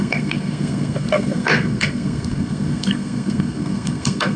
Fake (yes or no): yes